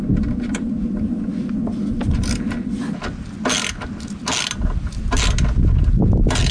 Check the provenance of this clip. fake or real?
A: real